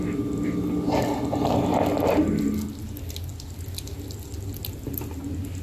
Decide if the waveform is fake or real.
real